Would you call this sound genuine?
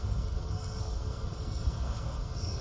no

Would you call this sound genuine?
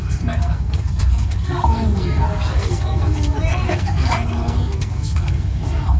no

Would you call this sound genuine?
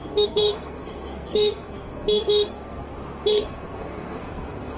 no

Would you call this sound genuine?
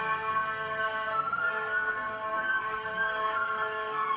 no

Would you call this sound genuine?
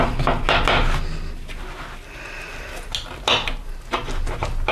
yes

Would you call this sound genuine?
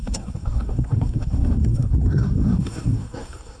no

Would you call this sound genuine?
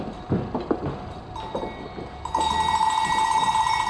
yes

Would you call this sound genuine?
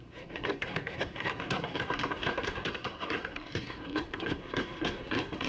no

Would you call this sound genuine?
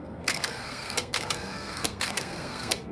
no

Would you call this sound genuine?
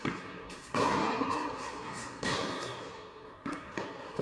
no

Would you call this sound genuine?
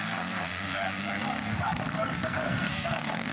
no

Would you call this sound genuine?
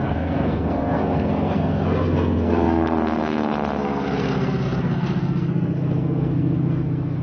no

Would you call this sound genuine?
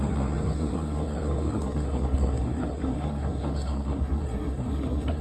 no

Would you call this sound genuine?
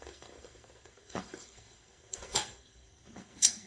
no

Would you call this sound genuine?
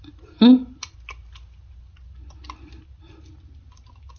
yes